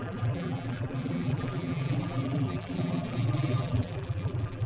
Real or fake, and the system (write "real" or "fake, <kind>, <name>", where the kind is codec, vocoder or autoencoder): fake, vocoder, BigVGAN v2